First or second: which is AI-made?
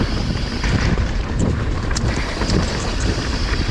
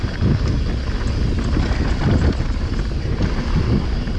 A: first